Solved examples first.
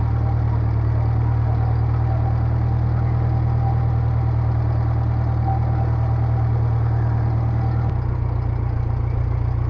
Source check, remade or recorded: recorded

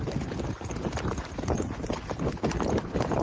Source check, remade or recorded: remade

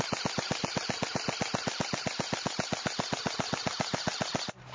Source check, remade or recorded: recorded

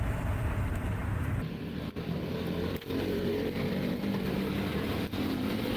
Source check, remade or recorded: remade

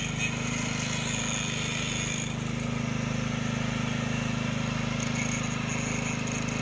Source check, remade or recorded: recorded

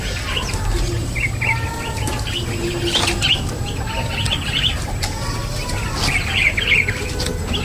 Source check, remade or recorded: recorded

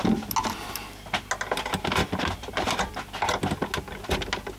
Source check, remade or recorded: recorded